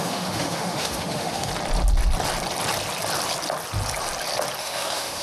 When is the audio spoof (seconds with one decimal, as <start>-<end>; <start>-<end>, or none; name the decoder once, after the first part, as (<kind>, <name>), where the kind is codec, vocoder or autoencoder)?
0.0-1.5 (autoencoder, DAC-VAE); 4.6-5.2